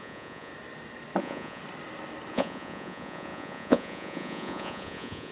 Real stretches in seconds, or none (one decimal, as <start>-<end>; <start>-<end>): 0.5-1.2; 1.6-2.3